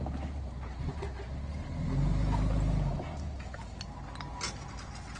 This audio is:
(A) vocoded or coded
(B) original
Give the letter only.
B